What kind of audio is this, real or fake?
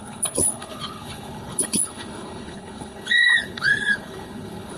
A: fake